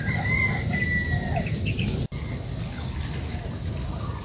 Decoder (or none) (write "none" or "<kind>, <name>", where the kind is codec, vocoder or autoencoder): none